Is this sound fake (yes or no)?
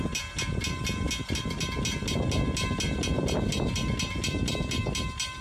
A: no